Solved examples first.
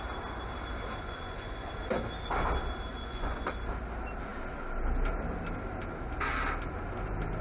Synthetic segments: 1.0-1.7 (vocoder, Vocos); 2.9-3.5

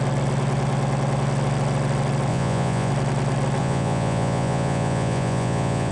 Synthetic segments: 2.3-2.9 (vocoder, Vocos); 3.6-5.9

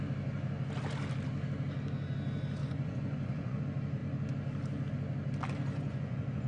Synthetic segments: 2.6-3.6 (vocoder, Vocos); 5.7-6.5

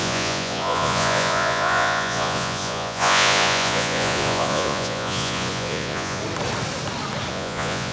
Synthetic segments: 0.0-6.2 (vocoder, Vocos); 7.3-7.9

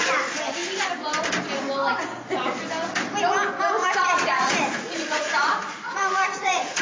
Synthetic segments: 3.8-6.8 (vocoder, Vocos)

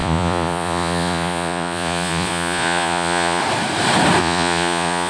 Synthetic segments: 0.0-3.4 (vocoder, Vocos); 4.2-5.1